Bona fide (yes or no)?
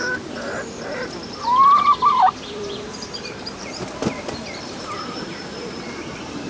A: no